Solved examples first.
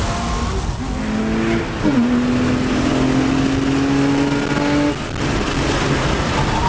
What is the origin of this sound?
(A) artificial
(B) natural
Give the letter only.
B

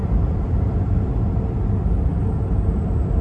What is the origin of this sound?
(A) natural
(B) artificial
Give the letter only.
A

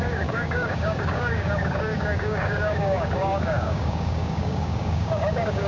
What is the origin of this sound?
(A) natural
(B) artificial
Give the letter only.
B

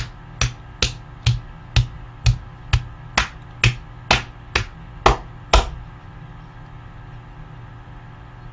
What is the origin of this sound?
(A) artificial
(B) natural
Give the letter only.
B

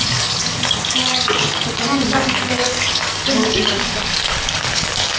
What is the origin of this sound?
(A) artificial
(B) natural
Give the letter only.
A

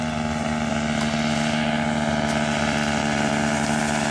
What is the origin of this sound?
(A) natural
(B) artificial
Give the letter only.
A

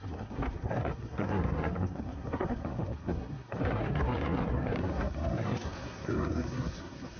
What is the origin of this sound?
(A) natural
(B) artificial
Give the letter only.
B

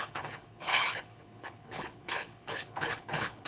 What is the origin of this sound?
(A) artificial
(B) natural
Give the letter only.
A